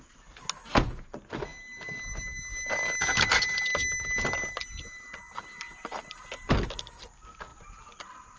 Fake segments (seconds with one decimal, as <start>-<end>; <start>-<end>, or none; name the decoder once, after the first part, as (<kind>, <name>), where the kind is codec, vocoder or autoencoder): none